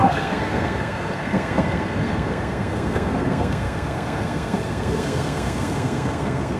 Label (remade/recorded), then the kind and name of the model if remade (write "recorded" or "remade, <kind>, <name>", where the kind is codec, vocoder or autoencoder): remade, codec, SNAC